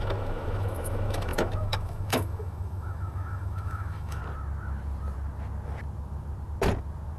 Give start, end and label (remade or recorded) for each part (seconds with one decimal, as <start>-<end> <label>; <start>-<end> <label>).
0.0-4.2 remade; 4.2-7.2 recorded